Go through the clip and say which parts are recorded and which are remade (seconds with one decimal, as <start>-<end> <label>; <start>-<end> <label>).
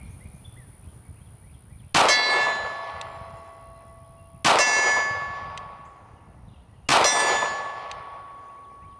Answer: 0.0-9.0 recorded